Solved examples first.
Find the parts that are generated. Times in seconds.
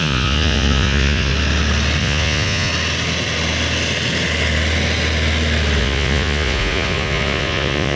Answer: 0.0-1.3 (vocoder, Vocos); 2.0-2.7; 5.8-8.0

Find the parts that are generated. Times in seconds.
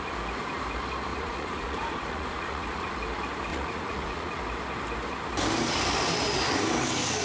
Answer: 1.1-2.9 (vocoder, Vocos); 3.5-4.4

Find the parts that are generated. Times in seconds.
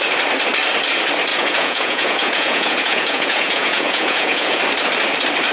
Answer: 1.3-4.6 (vocoder, Vocos)